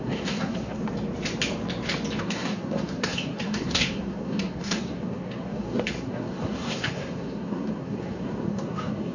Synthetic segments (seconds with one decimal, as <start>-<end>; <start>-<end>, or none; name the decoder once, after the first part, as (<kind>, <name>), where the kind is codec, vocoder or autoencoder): 0.0-0.8 (codec, SNAC); 2.2-9.1